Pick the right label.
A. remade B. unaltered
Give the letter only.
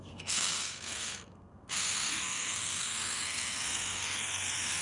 A